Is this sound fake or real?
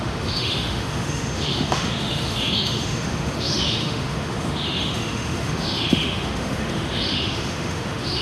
fake